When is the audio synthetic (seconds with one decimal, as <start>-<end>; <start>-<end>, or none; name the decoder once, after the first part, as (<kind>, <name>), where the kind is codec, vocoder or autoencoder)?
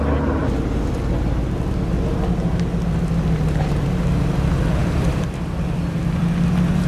none